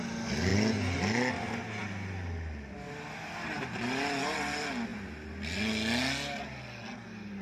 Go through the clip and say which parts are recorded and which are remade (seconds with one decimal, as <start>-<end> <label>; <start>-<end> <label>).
0.0-7.4 recorded